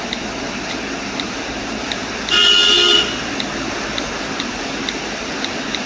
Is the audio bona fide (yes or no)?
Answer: yes